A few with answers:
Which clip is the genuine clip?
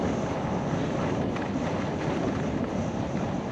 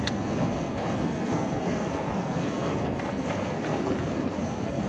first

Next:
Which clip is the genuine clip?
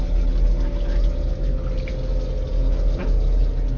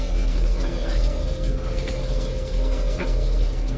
first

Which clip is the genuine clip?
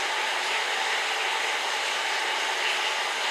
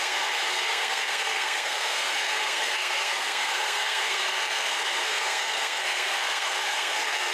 first